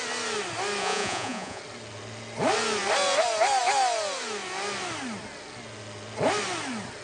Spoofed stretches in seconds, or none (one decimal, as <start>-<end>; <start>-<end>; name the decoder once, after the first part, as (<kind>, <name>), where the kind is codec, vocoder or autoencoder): 0.8-1.6 (vocoder, Vocos)